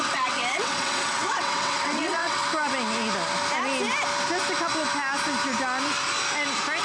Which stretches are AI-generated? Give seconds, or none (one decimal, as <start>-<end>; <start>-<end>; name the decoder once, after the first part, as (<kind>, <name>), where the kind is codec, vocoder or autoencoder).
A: 0.0-2.4 (vocoder, WaveNeXt)